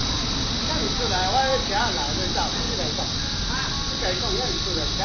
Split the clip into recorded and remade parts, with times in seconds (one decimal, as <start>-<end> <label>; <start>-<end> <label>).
0.0-5.0 recorded